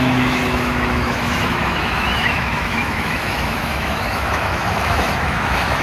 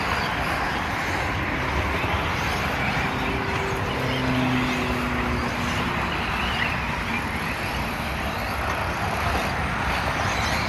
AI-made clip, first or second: first